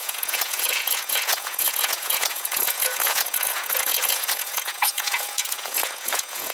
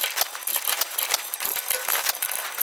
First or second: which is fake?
first